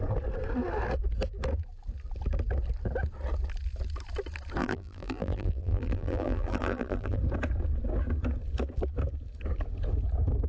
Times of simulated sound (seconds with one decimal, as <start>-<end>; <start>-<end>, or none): 4.6-7.2